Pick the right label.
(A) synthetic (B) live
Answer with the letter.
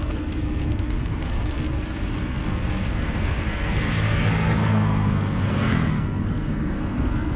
A